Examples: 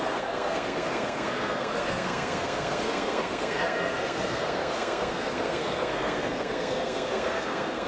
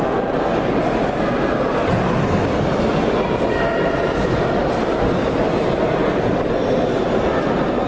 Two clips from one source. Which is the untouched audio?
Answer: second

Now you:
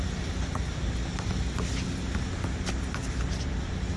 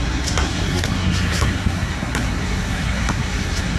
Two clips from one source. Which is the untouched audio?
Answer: first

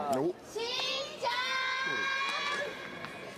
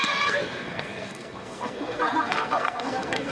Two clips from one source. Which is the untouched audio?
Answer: first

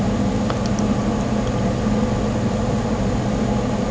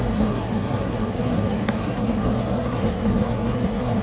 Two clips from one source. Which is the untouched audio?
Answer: first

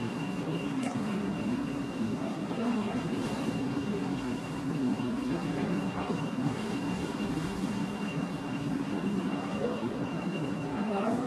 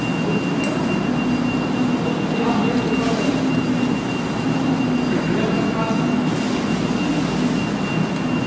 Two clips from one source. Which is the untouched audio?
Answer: second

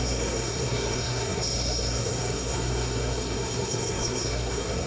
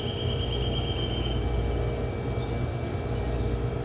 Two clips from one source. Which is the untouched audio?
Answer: second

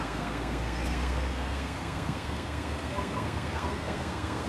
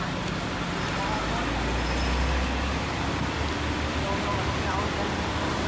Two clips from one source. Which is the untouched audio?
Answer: second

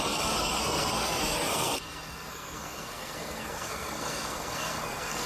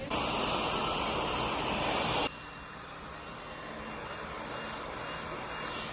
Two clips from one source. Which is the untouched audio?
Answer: second